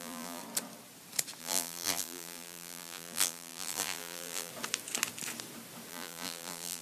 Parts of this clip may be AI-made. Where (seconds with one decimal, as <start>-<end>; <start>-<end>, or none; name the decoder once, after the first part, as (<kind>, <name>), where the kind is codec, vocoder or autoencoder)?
0.0-0.4 (vocoder, BigVGAN v2); 1.4-4.5; 5.9-6.8